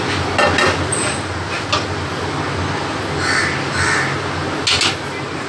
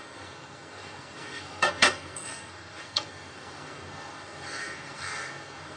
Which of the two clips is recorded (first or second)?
first